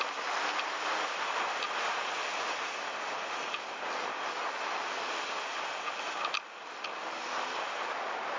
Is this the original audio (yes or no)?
yes